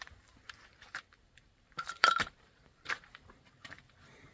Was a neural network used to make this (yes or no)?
yes